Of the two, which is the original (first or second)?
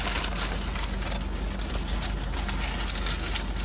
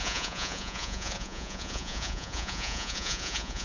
first